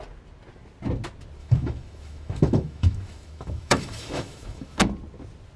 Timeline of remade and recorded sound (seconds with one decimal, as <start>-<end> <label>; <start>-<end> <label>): 0.0-1.4 recorded; 1.4-4.8 remade; 4.8-5.6 recorded